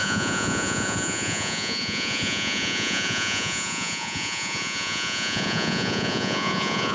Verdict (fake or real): fake